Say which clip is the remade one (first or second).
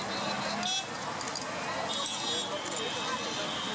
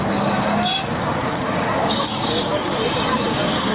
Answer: second